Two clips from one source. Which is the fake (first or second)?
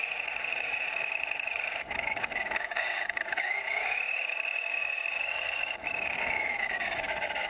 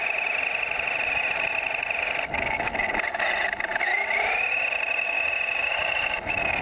first